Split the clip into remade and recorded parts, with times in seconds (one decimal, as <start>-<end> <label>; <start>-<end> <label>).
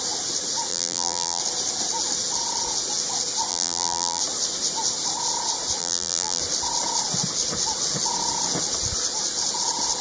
0.0-0.7 recorded; 0.7-1.4 remade; 1.4-3.5 recorded; 3.5-4.2 remade; 4.2-5.8 recorded; 5.8-6.4 remade; 6.4-10.0 recorded